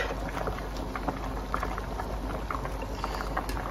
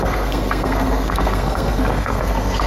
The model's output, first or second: second